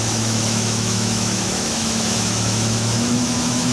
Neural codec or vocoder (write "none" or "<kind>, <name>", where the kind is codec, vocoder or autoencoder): autoencoder, DAC-VAE